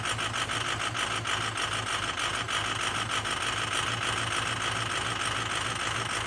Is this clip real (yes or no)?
yes